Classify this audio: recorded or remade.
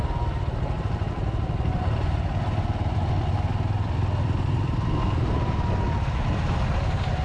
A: recorded